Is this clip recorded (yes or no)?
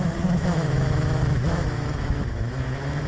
no